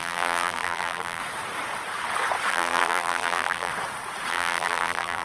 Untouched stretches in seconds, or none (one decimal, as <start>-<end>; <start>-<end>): 1.2-2.5; 3.7-4.3